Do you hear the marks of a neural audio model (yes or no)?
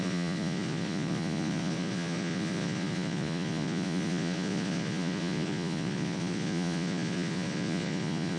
yes